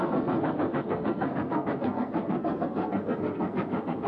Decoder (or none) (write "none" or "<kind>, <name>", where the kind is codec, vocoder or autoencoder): codec, SNAC